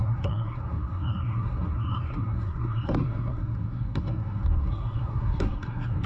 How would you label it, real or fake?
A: fake